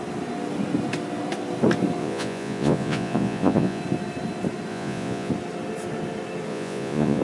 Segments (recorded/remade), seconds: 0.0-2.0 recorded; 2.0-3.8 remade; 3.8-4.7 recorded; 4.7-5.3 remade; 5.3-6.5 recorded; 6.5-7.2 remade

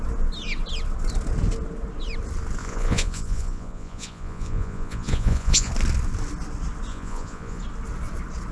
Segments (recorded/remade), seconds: 0.0-2.6 recorded; 2.6-5.7 remade; 5.7-6.9 recorded; 6.9-7.6 remade; 7.6-8.5 recorded

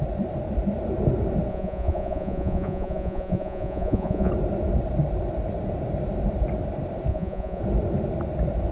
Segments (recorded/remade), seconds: 0.0-1.5 recorded; 1.5-4.3 remade; 4.3-7.1 recorded; 7.1-7.6 remade; 7.6-8.7 recorded

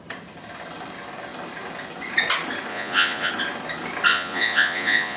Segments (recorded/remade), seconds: 0.0-2.7 recorded; 2.7-3.3 remade; 3.3-4.1 recorded; 4.1-5.2 remade

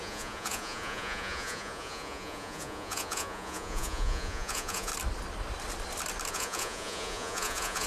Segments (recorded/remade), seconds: 0.0-4.9 remade; 4.9-6.3 recorded; 6.3-7.9 remade

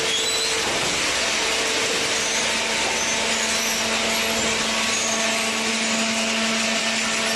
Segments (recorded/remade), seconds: 0.0-7.4 recorded

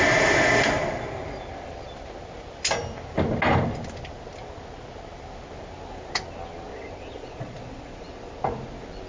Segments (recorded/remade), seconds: 0.0-6.7 recorded; 6.7-8.4 remade; 8.4-9.1 recorded